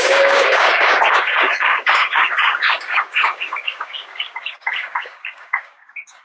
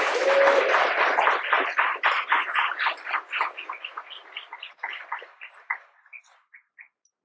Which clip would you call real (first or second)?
second